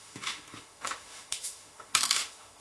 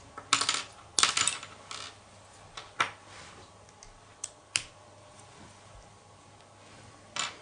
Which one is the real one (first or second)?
second